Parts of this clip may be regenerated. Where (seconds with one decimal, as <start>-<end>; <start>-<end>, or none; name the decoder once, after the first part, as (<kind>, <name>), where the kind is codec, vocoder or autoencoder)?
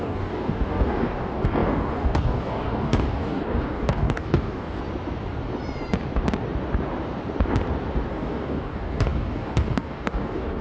0.0-4.8 (codec, DAC); 8.1-10.6